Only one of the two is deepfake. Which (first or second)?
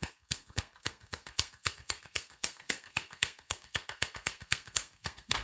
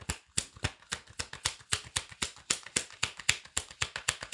first